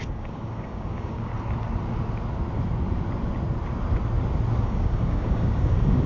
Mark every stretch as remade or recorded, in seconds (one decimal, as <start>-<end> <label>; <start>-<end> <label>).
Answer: 0.0-1.3 remade; 1.3-4.6 recorded; 4.6-6.1 remade